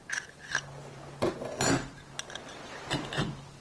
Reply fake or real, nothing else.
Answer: real